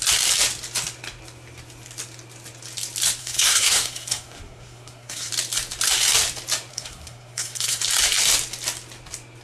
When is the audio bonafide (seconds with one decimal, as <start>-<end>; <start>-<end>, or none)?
0.0-3.2; 5.3-6.7; 7.8-9.4